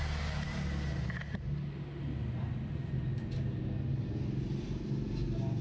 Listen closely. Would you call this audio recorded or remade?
recorded